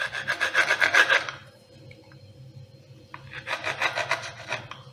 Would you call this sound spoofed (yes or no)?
no